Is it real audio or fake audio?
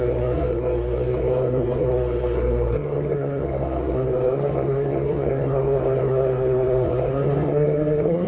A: fake